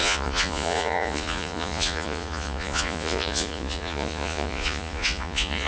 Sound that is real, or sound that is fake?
fake